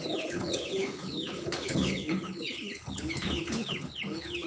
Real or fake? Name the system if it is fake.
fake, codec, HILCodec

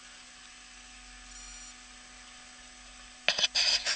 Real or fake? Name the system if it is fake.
real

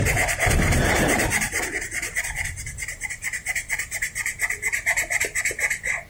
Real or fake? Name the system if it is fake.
fake, vocoder, BigVGAN v2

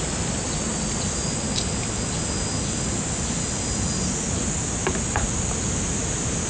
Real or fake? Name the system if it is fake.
real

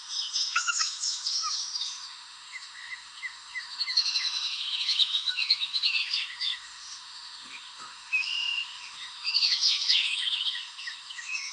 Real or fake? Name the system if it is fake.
fake, autoencoder, DAC-VAE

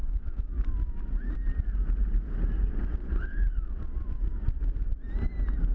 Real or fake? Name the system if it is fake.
real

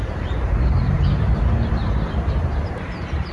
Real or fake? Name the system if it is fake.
fake, vocoder, BigVGAN v2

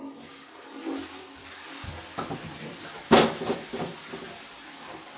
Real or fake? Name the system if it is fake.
real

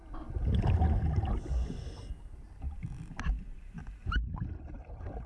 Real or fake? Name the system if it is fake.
real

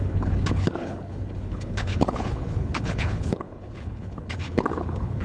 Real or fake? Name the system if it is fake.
fake, codec, HILCodec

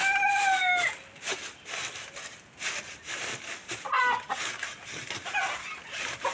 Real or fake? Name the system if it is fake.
real